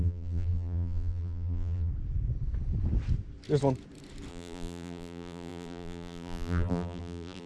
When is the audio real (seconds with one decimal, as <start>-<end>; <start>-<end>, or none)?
1.9-4.3